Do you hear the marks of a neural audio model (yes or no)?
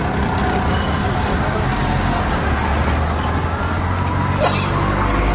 no